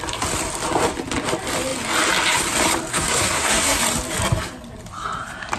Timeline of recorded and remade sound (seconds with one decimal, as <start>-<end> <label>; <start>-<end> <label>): 0.0-2.9 recorded; 2.9-3.8 remade; 3.8-5.6 recorded